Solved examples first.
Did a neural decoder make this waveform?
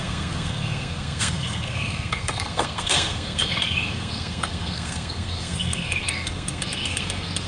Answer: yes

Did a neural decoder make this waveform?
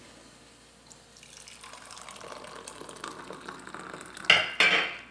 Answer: no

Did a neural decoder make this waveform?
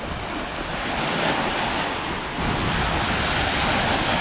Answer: no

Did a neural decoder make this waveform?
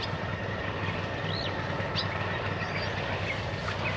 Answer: no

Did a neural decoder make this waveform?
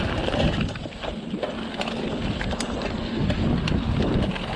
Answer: no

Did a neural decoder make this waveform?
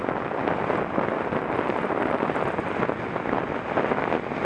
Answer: no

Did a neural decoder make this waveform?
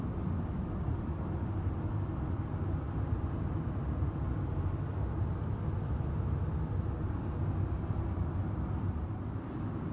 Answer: no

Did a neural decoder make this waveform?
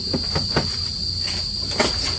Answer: no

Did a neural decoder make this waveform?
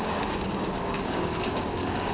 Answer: yes